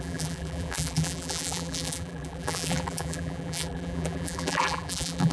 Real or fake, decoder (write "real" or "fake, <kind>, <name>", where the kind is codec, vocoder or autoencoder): fake, vocoder, BigVGAN v2